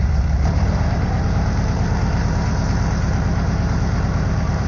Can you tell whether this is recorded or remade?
remade